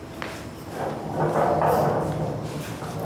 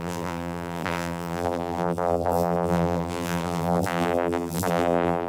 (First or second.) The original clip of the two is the first